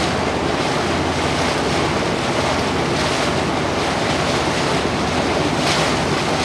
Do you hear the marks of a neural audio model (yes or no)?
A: no